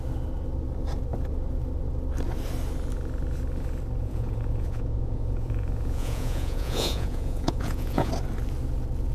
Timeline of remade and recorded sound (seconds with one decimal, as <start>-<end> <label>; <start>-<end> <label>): 0.0-4.0 recorded; 4.0-8.1 remade; 8.1-9.1 recorded